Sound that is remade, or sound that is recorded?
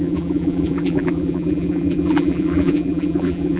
remade